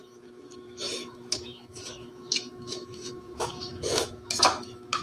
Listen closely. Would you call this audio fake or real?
fake